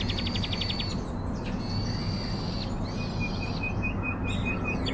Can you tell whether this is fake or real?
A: real